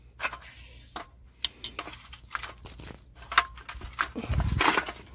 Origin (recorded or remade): recorded